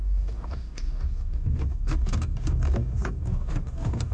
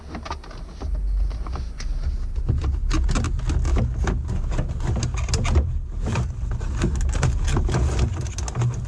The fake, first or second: first